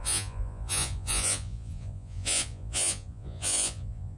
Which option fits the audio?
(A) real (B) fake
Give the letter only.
B